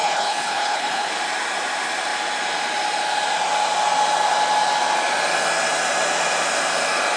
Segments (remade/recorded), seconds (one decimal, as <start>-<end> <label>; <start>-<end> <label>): 0.0-1.1 remade; 1.1-7.2 recorded